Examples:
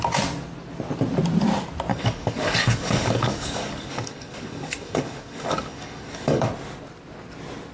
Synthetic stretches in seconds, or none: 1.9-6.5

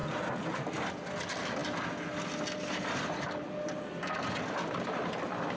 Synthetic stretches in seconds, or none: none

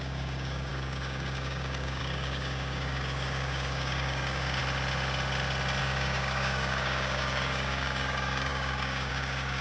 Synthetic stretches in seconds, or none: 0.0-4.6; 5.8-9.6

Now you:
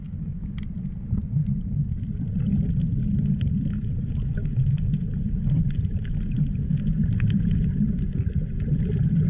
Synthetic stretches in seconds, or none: 0.0-0.5

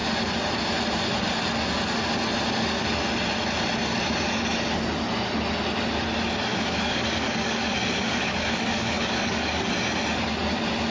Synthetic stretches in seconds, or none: 6.5-9.7